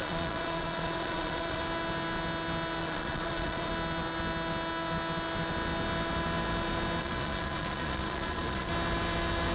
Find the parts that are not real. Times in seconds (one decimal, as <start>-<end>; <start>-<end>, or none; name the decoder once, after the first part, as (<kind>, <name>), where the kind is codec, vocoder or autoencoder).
0.0-1.6 (vocoder, Vocos); 2.8-3.7; 7.0-8.7